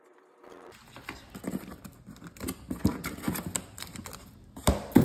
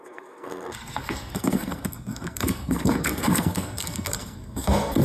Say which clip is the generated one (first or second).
second